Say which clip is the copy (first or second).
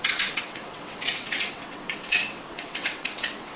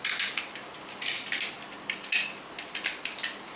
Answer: first